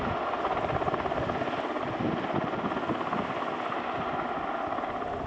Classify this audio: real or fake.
real